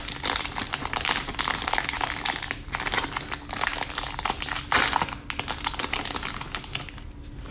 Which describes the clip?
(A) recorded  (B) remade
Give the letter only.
A